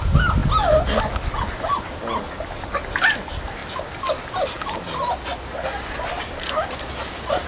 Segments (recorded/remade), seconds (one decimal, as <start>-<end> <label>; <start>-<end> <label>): 0.0-7.5 recorded